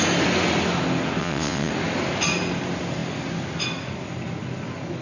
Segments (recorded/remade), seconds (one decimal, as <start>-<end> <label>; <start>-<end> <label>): 0.0-1.2 recorded; 1.2-1.7 remade; 1.7-5.0 recorded